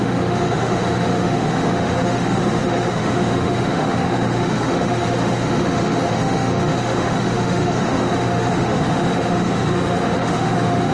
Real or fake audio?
fake